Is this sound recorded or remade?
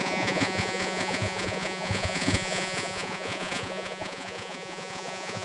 remade